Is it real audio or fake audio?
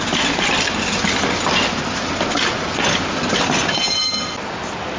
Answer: real